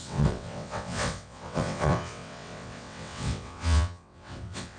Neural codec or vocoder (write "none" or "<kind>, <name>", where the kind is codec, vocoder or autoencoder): vocoder, WaveNeXt